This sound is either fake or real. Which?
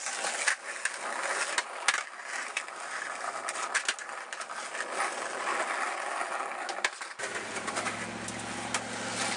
real